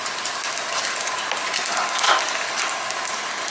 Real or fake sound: real